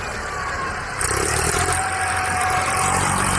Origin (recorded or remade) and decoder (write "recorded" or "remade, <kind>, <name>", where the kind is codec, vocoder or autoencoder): remade, vocoder, BigVGAN v2